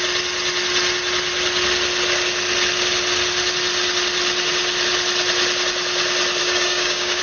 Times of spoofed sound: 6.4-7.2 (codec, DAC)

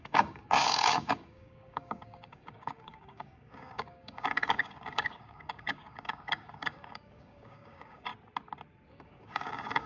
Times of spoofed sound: 0.0-8.1 (codec, DAC); 8.9-9.9